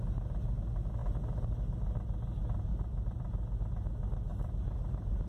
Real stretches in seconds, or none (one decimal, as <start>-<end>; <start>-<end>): 0.0-1.0; 1.6-2.7; 3.7-4.3